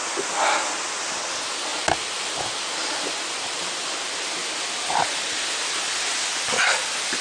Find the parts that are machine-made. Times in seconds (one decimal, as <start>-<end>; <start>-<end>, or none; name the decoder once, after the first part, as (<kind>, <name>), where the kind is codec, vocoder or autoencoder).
none